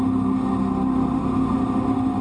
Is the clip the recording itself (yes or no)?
yes